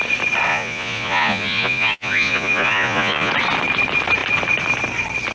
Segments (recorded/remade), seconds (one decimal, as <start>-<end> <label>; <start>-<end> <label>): 0.0-0.5 recorded; 0.5-3.3 remade; 3.3-5.3 recorded